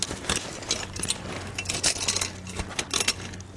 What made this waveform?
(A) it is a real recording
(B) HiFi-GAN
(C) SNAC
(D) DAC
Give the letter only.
A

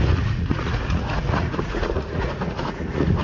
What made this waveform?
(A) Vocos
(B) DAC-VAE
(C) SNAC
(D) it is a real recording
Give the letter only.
A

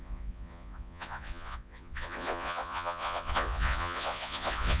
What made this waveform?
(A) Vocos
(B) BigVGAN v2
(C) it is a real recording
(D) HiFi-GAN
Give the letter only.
A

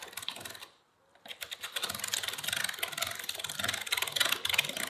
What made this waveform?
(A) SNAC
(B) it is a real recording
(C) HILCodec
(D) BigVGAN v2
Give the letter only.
B